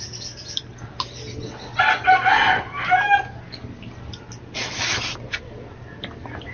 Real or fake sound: real